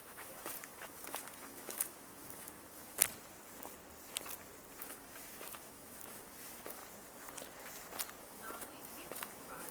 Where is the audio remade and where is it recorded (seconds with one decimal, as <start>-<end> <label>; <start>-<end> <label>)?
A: 0.0-3.0 remade; 3.0-4.8 recorded; 4.8-6.8 remade; 6.8-8.2 recorded; 8.2-9.7 remade